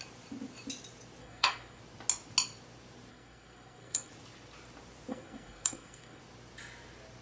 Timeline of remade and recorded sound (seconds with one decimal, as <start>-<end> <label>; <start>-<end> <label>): 0.0-1.2 recorded; 1.2-1.8 remade; 1.8-3.1 recorded; 3.1-4.1 remade; 4.1-5.1 recorded; 5.1-6.2 remade; 6.2-7.2 recorded